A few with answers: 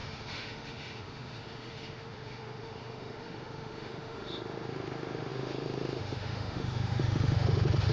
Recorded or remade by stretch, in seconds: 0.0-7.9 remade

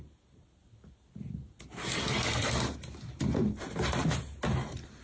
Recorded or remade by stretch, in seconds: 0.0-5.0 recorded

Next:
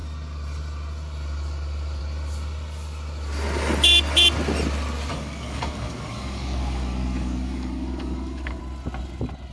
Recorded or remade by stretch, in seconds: 0.0-5.1 recorded; 5.1-8.6 remade; 8.6-9.5 recorded